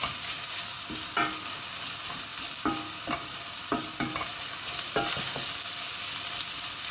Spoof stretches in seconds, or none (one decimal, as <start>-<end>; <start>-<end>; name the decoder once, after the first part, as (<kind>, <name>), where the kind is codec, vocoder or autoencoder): 2.3-3.9 (vocoder, BigVGAN v2)